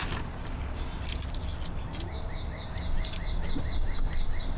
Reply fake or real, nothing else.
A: real